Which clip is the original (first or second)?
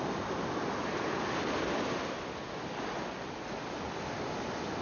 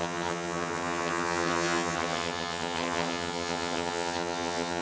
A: first